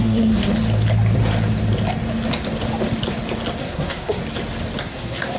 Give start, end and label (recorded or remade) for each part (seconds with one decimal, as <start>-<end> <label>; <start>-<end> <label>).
0.0-0.5 remade; 0.5-3.6 recorded; 3.6-4.2 remade; 4.2-4.8 recorded; 4.8-5.4 remade